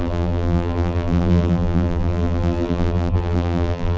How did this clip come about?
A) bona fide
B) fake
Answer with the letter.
B